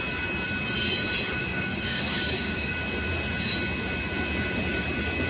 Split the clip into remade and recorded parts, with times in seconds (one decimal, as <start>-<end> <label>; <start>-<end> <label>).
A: 0.0-1.4 recorded; 1.4-2.7 remade; 2.7-5.3 recorded